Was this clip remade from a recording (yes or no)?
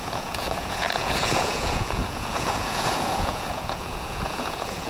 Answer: yes